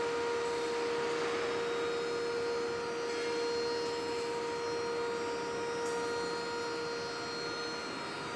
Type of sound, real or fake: real